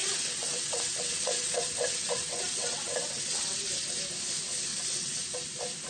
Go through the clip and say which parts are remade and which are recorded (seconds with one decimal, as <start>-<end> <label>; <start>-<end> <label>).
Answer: 0.0-3.5 remade; 3.5-4.7 recorded; 4.7-5.2 remade; 5.2-5.9 recorded